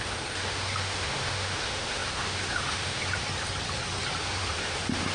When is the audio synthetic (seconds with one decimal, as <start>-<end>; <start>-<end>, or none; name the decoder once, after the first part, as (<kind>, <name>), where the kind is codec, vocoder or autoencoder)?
0.0-3.0 (autoencoder, DAC-VAE); 4.2-5.1